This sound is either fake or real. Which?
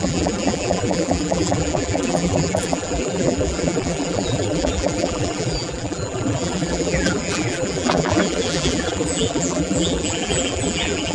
fake